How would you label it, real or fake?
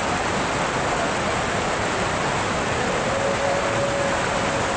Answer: real